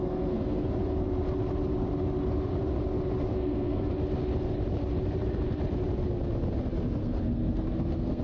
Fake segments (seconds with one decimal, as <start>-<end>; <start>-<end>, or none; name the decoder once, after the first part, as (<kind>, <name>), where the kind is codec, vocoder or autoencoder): 0.0-0.7 (codec, SNAC); 3.3-3.9; 7.0-8.2